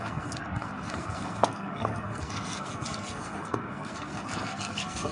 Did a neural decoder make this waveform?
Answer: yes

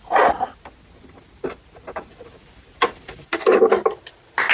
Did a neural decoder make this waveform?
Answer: no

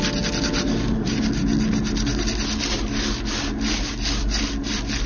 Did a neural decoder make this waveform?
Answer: no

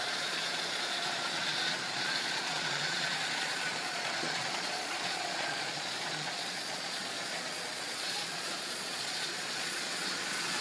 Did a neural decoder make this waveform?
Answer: yes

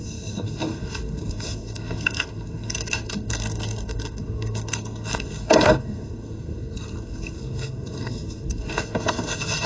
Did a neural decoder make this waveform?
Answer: yes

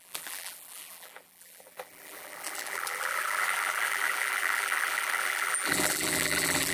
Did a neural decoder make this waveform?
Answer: yes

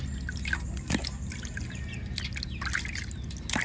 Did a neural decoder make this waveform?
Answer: no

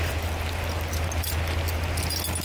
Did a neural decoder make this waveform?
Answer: no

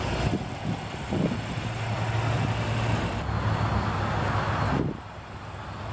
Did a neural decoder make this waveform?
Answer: no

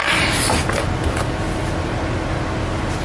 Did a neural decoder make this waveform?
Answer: no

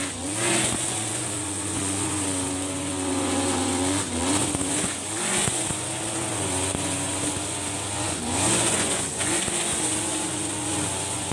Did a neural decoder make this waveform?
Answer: yes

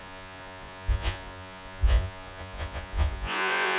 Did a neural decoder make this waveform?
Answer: yes